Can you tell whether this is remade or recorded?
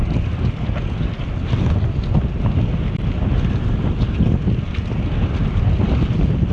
recorded